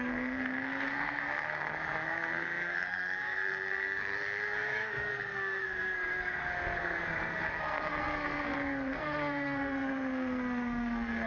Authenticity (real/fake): fake